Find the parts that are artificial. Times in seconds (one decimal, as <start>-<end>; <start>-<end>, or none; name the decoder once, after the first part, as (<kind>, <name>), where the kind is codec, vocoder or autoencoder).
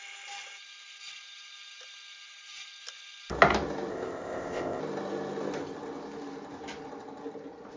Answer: 3.9-4.8 (codec, ZipCodec)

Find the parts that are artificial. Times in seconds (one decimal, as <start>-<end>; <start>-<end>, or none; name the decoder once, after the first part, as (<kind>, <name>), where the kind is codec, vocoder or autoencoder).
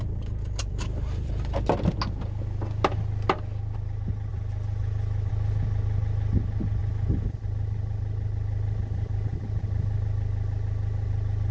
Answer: 0.6-1.3 (vocoder, BigVGAN v2); 4.3-5.3; 6.8-7.4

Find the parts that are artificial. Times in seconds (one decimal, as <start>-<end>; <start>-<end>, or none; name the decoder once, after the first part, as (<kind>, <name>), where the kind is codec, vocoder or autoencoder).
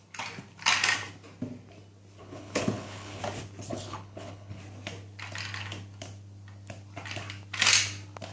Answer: 2.2-3.2 (codec, HILCodec); 3.7-4.6